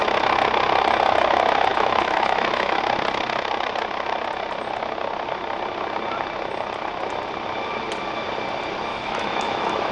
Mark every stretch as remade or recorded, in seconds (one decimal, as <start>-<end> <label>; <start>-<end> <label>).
0.0-1.7 recorded; 1.7-2.8 remade; 2.8-8.9 recorded; 8.9-9.9 remade